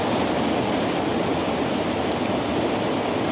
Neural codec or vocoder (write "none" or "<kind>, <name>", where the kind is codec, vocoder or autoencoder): none